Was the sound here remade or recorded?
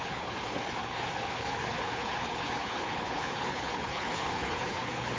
remade